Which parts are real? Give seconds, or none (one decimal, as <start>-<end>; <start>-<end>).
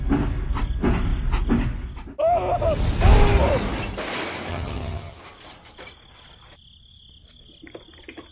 0.0-4.5; 5.2-8.3